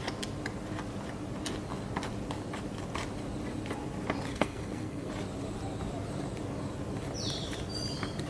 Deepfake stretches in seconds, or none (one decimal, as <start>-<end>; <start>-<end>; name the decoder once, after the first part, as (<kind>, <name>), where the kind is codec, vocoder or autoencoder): 4.3-5.1 (codec, SNAC)

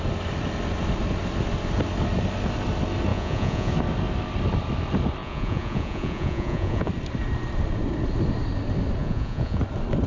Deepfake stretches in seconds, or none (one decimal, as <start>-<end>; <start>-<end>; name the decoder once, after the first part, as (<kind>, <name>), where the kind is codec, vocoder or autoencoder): 3.1-3.7 (vocoder, Vocos); 5.2-6.9; 9.0-9.6

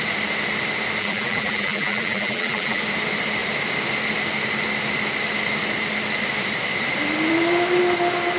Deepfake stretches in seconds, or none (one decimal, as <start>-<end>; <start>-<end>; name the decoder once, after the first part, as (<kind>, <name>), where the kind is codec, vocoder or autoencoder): 1.0-2.8 (vocoder, BigVGAN v2)

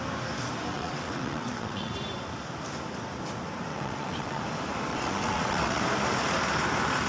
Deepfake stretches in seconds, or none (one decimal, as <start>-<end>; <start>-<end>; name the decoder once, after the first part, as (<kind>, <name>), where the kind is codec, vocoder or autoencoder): 0.7-1.9 (vocoder, WaveNeXt); 3.7-4.4; 4.9-5.8

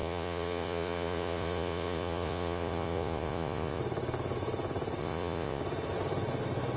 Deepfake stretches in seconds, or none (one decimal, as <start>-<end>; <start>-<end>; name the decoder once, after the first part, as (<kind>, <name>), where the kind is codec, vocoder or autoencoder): 0.0-3.8 (vocoder, Vocos); 5.0-5.6

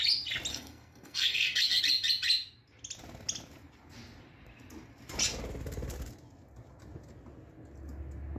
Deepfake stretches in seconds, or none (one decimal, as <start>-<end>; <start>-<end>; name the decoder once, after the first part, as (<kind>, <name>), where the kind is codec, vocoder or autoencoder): 0.5-1.8 (codec, SNAC)

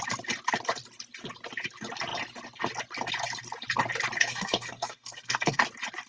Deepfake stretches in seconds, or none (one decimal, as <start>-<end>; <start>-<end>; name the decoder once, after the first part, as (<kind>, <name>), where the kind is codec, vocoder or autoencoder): 4.2-5.6 (codec, SNAC)